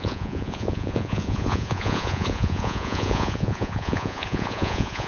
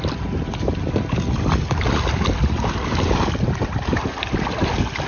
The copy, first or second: first